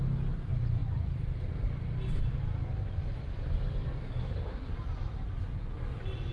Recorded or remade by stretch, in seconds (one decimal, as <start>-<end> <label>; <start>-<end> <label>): 0.0-4.0 recorded; 4.0-4.7 remade; 4.7-6.3 recorded